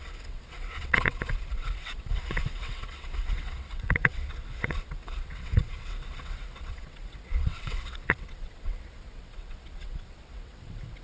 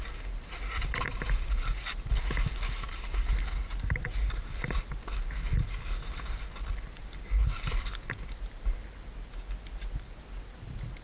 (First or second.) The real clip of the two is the second